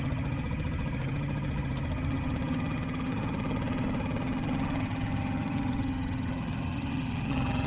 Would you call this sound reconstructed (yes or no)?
yes